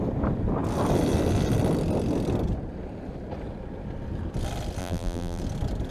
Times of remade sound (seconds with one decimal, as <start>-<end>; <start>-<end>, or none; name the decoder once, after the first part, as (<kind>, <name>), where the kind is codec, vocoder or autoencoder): 4.8-5.4 (vocoder, BigVGAN v2)